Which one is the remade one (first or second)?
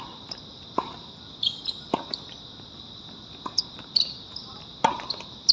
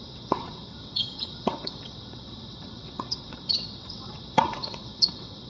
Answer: second